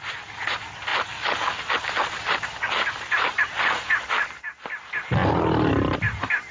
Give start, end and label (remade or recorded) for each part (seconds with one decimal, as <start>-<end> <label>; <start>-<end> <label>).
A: 0.0-6.5 recorded